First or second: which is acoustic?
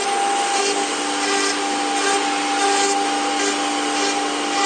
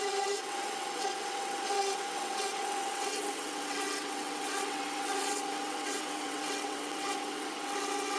first